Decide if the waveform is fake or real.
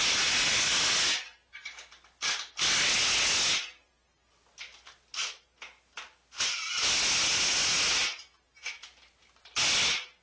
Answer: real